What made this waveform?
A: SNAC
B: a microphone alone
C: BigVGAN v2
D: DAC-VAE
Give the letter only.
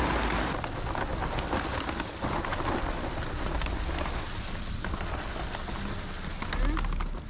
B